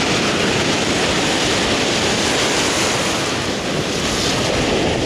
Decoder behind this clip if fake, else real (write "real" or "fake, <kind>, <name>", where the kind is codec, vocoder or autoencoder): real